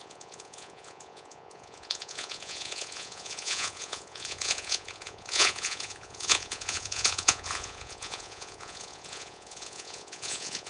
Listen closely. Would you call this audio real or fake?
fake